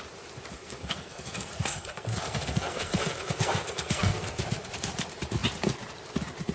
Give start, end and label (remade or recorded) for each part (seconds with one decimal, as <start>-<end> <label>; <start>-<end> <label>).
0.0-0.5 recorded; 0.5-4.4 remade; 4.4-6.5 recorded